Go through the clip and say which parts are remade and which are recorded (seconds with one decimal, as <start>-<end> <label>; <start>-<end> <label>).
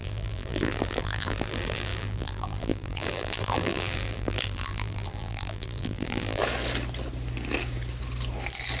0.0-6.4 remade; 6.4-8.8 recorded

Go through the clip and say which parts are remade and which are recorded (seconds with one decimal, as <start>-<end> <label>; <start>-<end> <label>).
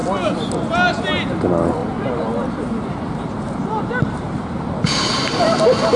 0.0-1.8 recorded; 1.8-5.4 remade; 5.4-6.0 recorded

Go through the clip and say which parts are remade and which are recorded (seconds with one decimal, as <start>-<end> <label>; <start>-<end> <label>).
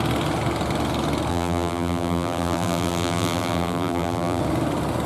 0.0-1.3 recorded; 1.3-4.4 remade; 4.4-5.1 recorded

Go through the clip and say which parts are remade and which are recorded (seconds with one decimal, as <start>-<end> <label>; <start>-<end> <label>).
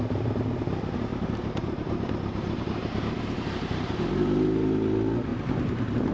0.0-1.1 recorded; 1.1-4.1 remade; 4.1-5.3 recorded; 5.3-6.1 remade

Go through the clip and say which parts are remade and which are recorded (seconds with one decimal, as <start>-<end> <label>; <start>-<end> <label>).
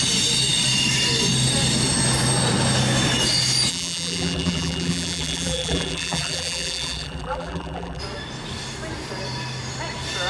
0.0-3.7 recorded; 3.7-8.0 remade; 8.0-10.3 recorded